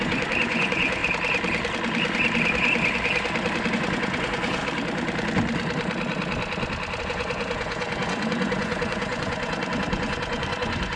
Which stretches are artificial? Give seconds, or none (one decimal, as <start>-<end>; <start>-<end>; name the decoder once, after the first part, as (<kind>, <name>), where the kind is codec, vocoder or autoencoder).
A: 0.0-1.0 (vocoder, Vocos); 3.7-4.6; 7.0-11.0

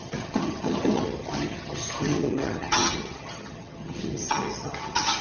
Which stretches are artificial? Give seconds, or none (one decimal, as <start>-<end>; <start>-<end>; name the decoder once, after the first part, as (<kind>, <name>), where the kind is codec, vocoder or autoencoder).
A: 0.0-5.2 (vocoder, HiFi-GAN)

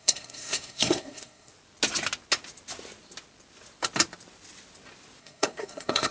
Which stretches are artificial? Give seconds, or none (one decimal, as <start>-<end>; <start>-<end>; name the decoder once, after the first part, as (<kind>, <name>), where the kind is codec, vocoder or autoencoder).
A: 0.0-1.5 (codec, SNAC); 5.2-6.1

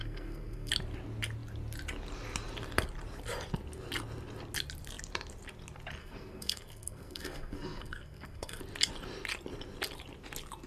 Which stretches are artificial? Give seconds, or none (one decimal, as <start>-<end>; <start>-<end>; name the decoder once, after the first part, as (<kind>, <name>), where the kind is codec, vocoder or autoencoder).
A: 0.0-0.7 (codec, SNAC); 6.0-8.6

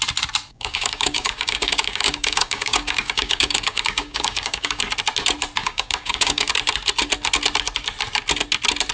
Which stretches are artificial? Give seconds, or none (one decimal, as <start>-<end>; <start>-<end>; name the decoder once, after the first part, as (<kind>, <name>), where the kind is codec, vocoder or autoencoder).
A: 0.5-4.8 (codec, DAC); 5.6-6.5

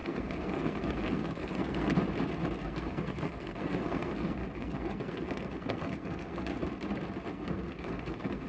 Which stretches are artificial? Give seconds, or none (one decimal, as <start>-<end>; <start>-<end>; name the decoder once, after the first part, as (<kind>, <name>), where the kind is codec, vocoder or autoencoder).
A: 0.0-1.9 (codec, SNAC); 2.6-6.5; 7.3-8.5

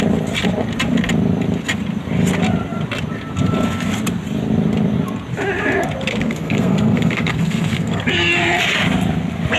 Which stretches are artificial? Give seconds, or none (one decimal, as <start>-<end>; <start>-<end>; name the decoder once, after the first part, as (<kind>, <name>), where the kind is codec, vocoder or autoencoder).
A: 6.1-8.0 (codec, SNAC)